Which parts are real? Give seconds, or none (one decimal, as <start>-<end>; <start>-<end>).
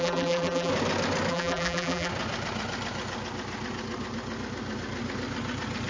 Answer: 0.7-1.3; 2.1-5.9